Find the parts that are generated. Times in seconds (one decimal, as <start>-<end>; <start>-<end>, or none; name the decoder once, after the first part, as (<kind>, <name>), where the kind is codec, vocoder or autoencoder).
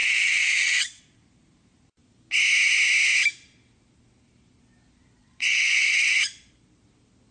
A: 0.0-1.0 (vocoder, WaveNeXt); 5.2-6.2